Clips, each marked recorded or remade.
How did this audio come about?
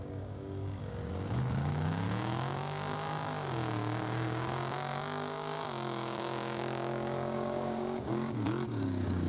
remade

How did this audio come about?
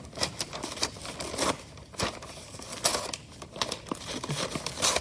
recorded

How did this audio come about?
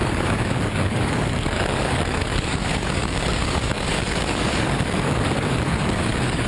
remade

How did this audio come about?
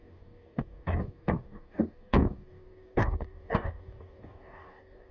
remade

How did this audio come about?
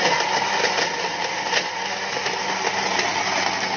recorded